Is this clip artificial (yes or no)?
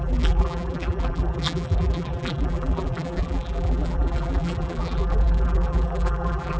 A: yes